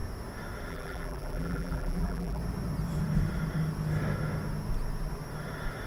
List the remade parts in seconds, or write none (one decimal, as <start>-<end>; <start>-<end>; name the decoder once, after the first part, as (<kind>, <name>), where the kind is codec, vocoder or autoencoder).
0.7-2.4 (vocoder, BigVGAN v2)